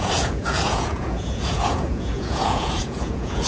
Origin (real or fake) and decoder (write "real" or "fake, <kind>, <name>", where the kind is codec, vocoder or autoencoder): fake, vocoder, Vocos